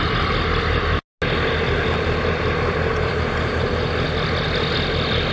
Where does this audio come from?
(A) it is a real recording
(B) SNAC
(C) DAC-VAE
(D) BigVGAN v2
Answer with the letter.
A